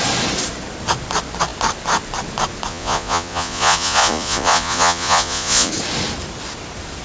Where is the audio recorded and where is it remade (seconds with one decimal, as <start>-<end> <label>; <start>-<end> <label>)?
0.0-2.7 recorded; 2.7-5.7 remade; 5.7-7.0 recorded